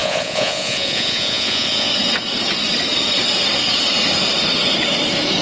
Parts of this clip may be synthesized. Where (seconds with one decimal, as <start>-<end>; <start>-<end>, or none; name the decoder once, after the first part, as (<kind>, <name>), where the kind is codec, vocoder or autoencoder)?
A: 0.0-1.9 (vocoder, Vocos)